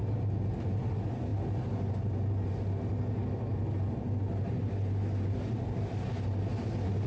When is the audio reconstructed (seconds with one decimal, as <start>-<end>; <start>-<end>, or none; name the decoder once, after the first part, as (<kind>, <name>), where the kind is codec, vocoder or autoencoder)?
none